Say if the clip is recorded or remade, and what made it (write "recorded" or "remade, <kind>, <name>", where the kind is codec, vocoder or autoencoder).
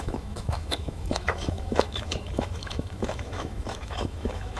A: remade, autoencoder, DAC-VAE